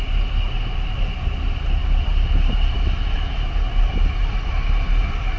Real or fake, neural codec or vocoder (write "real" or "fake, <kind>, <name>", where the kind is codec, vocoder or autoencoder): real